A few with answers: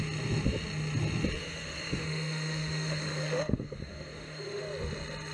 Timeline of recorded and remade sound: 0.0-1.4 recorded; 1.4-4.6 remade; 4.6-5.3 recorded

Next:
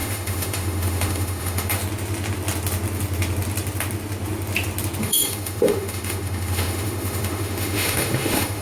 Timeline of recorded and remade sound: 0.0-1.8 remade; 1.8-5.0 recorded; 5.0-8.6 remade

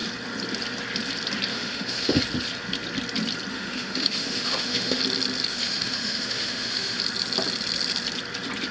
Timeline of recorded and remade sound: 0.0-1.5 recorded; 1.5-2.2 remade; 2.2-3.5 recorded; 3.5-5.0 remade; 5.0-5.5 recorded; 5.5-7.0 remade; 7.0-8.7 recorded

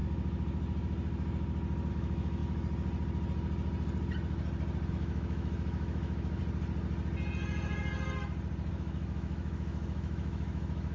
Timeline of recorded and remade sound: 0.0-1.9 recorded; 1.9-2.4 remade; 2.4-4.9 recorded; 4.9-6.4 remade; 6.4-8.7 recorded; 8.7-10.9 remade